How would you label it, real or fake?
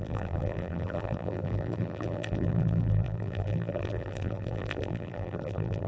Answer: fake